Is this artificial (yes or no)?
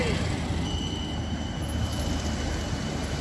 no